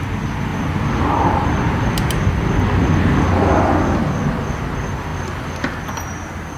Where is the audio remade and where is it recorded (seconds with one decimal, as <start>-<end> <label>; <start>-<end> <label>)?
0.0-6.6 recorded